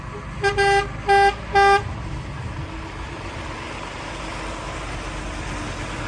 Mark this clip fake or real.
real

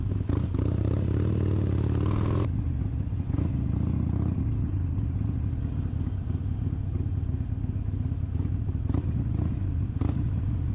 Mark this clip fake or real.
real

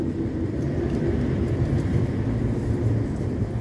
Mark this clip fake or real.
fake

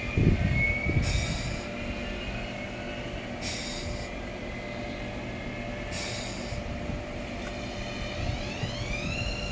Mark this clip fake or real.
real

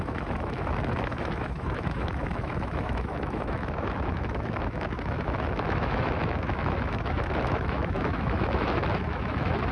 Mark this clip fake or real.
fake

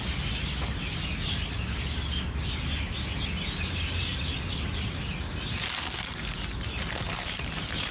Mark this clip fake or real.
real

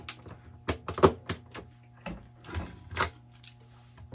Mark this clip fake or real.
real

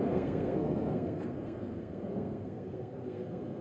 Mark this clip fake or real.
fake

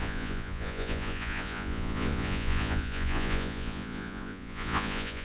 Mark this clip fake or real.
fake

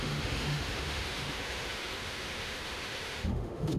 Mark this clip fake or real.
fake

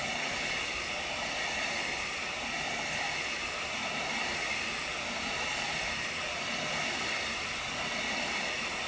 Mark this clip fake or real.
real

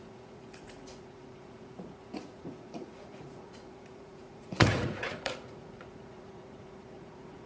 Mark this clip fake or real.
fake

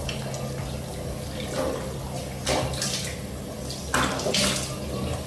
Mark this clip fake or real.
real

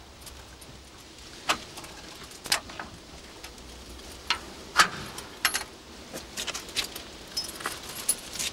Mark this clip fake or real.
real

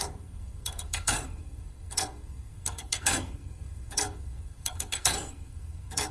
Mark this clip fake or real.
fake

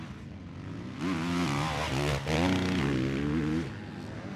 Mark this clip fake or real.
real